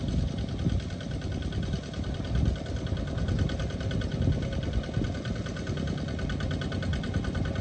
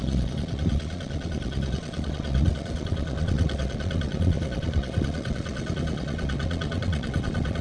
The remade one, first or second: second